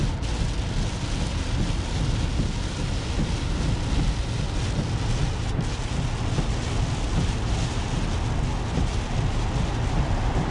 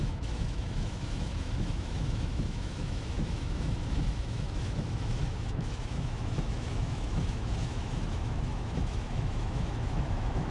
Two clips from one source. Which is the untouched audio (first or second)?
first